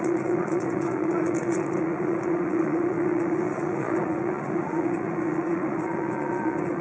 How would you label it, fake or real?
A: fake